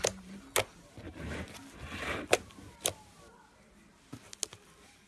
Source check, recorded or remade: recorded